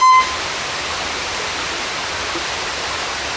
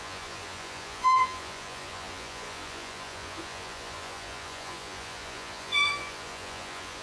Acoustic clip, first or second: first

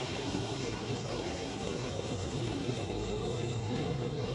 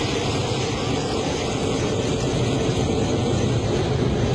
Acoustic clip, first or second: second